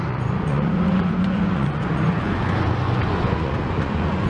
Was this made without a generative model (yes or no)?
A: no